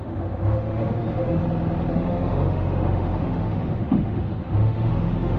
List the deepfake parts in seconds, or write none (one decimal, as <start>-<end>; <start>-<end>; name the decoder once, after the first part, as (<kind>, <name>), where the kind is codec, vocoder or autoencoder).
0.0-1.4 (autoencoder, DAC-VAE); 1.9-5.4